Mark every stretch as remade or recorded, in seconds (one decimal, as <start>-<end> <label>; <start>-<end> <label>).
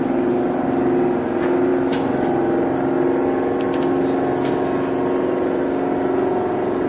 0.0-6.9 recorded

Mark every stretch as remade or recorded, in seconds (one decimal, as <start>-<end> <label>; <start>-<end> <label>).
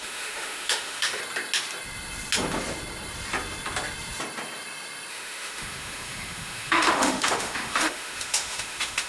0.0-1.2 remade; 1.2-5.1 recorded; 5.1-9.1 remade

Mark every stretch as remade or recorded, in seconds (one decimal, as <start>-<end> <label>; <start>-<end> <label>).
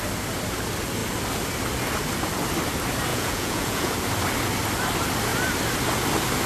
0.0-3.1 recorded; 3.1-3.9 remade; 3.9-6.5 recorded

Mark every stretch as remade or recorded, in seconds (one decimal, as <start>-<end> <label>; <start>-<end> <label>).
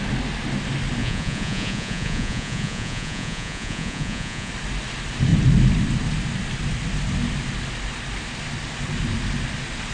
0.0-1.0 recorded; 1.0-4.5 remade; 4.5-9.9 recorded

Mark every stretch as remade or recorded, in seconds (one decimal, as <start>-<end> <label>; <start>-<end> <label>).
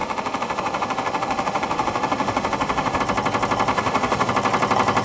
0.0-3.0 remade; 3.0-3.7 recorded; 3.7-4.3 remade; 4.3-5.0 recorded